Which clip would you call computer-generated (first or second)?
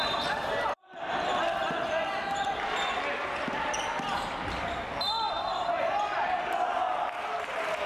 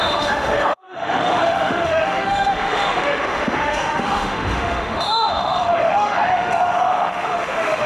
second